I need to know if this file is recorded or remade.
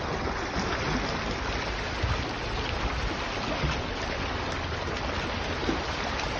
recorded